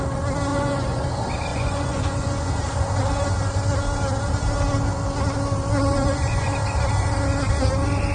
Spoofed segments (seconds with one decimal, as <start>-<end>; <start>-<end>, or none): 0.5-1.1; 1.5-2.5; 5.9-6.5